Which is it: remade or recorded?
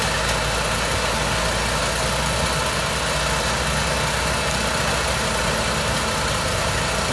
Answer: recorded